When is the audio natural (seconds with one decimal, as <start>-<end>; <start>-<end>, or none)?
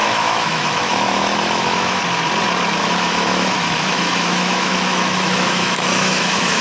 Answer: 2.0-2.8